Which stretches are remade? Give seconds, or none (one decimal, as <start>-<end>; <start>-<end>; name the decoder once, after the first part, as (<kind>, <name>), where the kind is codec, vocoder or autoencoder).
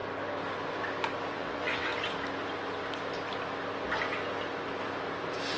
1.3-1.9 (vocoder, WaveNeXt)